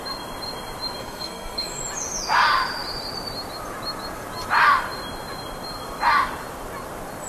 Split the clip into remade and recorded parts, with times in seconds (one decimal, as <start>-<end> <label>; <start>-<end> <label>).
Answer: 0.0-1.0 recorded; 1.0-1.8 remade; 1.8-7.3 recorded